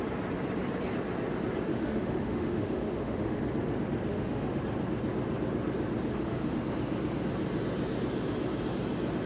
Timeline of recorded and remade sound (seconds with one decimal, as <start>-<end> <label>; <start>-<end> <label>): 0.0-1.7 recorded; 1.7-3.4 remade; 3.4-4.1 recorded; 4.1-4.6 remade; 4.6-6.1 recorded; 6.1-6.6 remade; 6.6-9.3 recorded

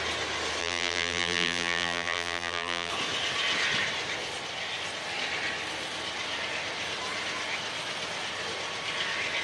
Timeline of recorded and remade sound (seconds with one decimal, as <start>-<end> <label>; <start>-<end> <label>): 0.0-0.6 recorded; 0.6-2.9 remade; 2.9-9.4 recorded

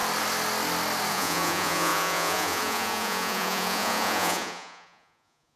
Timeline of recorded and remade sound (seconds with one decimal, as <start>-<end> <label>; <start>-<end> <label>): 0.0-1.1 recorded; 1.1-5.6 remade

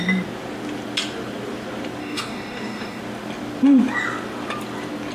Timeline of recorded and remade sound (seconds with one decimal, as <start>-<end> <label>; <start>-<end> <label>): 0.0-2.0 recorded; 2.0-3.0 remade; 3.0-5.1 recorded